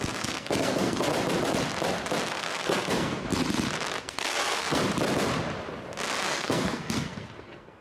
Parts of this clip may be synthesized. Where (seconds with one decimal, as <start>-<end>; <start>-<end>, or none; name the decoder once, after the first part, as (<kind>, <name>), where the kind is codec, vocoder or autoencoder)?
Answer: 0.0-1.1 (codec, SNAC); 2.3-3.3; 4.0-4.8; 6.2-7.8